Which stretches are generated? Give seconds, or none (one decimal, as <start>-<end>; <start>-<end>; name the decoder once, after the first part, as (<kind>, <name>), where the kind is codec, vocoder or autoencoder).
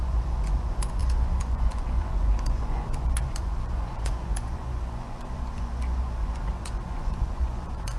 0.0-8.0 (vocoder, Vocos)